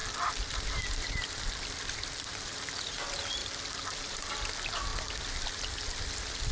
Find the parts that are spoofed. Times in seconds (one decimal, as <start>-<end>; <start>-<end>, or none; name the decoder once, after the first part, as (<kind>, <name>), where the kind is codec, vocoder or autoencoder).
none

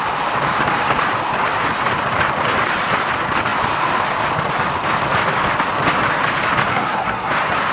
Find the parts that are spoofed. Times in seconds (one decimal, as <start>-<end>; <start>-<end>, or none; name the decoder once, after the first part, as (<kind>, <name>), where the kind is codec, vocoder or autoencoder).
6.7-7.3 (codec, SNAC)

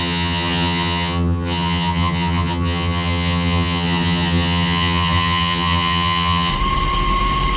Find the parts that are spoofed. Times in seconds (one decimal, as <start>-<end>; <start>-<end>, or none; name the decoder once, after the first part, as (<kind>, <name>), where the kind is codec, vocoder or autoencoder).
0.0-6.5 (vocoder, HiFi-GAN)